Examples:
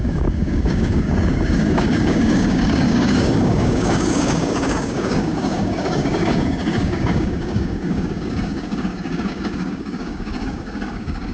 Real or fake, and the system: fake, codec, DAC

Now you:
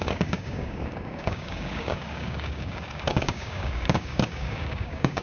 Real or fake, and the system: fake, codec, DAC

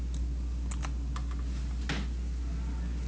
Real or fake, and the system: real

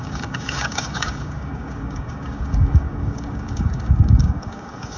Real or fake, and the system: fake, codec, DAC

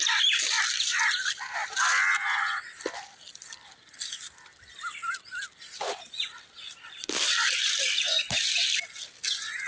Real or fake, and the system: real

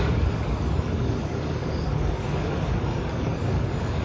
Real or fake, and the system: fake, codec, DAC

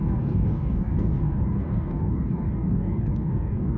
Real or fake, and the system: fake, codec, DAC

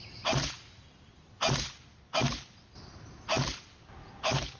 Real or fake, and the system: real